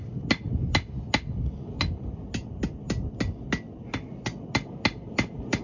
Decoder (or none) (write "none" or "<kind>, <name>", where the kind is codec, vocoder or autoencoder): none